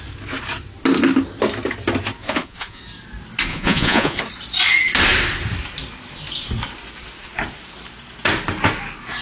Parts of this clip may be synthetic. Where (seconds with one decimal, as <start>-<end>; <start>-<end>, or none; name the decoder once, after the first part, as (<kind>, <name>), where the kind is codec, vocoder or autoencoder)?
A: 2.2-2.8 (vocoder, Vocos); 3.5-4.2